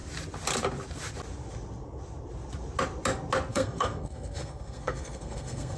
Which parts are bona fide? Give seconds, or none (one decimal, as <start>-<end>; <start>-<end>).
0.0-3.5